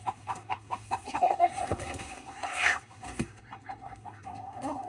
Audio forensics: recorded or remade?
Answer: remade